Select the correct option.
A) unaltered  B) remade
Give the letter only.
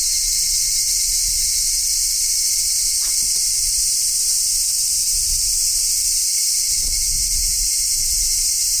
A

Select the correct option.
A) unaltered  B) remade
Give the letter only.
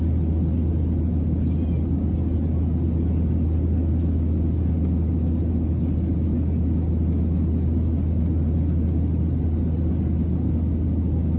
A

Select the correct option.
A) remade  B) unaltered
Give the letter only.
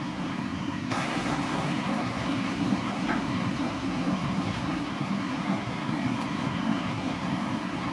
A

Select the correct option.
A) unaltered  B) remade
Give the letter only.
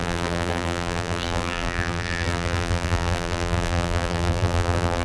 B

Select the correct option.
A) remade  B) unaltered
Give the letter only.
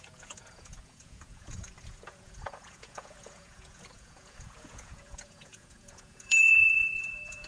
A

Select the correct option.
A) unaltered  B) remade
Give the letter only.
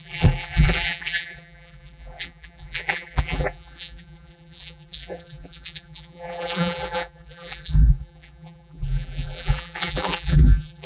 B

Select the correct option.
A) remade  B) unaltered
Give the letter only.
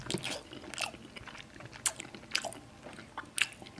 B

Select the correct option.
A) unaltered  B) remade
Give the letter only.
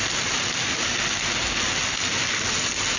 A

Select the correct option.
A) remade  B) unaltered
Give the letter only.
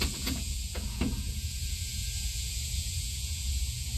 A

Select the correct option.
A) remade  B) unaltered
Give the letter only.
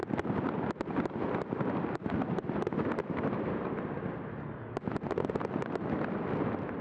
B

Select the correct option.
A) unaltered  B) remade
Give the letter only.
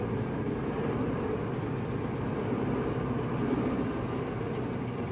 A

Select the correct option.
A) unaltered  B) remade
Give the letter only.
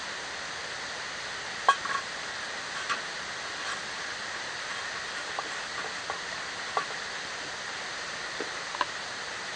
A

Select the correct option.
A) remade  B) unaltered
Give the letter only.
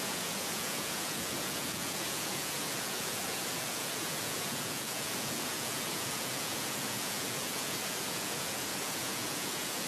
A